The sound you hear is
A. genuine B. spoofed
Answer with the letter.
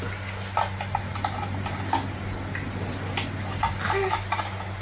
A